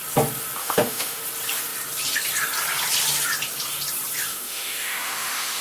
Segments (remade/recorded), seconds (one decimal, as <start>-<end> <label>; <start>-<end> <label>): 0.0-0.6 recorded; 0.6-1.2 remade; 1.2-4.3 recorded; 4.3-5.6 remade